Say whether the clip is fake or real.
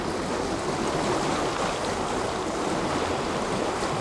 real